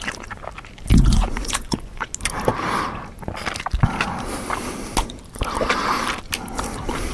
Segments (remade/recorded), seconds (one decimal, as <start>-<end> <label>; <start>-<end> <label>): 0.0-0.9 recorded; 0.9-2.1 remade; 2.1-7.1 recorded